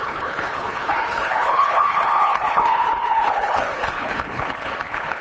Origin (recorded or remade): remade